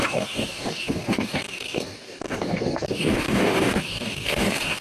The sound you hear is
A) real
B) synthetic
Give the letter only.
B